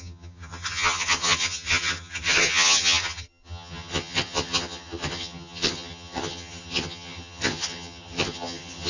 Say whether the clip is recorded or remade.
remade